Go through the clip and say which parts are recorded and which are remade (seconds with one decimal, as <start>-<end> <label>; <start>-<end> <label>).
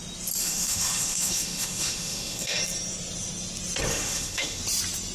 0.0-0.4 recorded; 0.4-2.6 remade; 2.6-3.9 recorded; 3.9-4.6 remade; 4.6-5.1 recorded